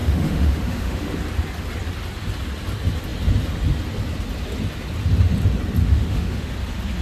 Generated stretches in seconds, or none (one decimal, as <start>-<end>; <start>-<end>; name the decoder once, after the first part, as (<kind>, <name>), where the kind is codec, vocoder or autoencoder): 0.0-1.1 (autoencoder, DAC-VAE); 5.8-6.5